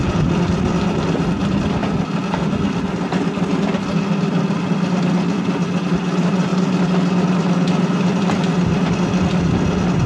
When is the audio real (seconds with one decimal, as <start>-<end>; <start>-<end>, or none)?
0.0-10.1